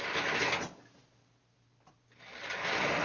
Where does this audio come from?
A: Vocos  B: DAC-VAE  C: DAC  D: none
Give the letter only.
D